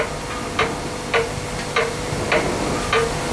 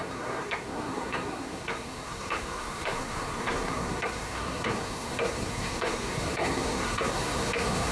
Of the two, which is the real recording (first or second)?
first